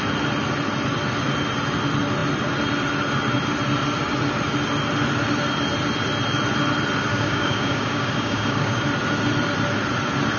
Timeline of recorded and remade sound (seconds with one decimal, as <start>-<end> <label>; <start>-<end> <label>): 0.0-7.1 recorded; 7.1-8.8 remade; 8.8-10.4 recorded